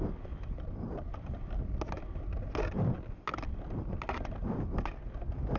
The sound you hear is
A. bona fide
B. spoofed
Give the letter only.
A